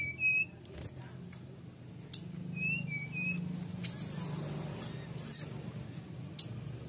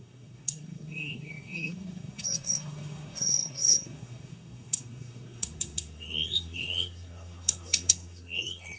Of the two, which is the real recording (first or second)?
first